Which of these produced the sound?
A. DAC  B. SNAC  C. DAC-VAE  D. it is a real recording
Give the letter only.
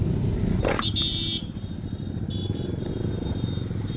D